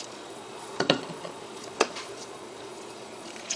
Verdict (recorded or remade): remade